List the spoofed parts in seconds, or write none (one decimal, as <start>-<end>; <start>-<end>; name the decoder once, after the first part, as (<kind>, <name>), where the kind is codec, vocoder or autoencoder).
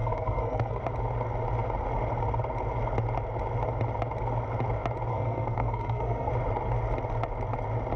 0.0-0.8 (codec, SNAC); 5.1-6.3